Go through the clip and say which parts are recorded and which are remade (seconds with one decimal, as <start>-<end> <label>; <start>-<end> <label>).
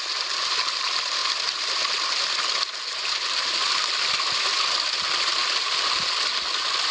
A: 0.0-6.9 recorded